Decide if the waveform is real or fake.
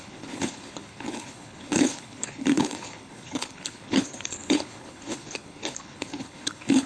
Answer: fake